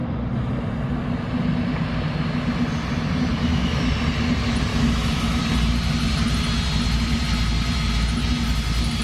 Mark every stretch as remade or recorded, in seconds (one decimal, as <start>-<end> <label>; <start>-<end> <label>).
0.0-3.4 recorded; 3.4-3.9 remade; 3.9-4.7 recorded; 4.7-5.4 remade; 5.4-9.0 recorded